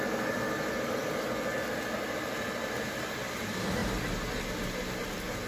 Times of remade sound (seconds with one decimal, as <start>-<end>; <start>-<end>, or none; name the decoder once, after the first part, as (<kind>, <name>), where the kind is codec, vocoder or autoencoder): none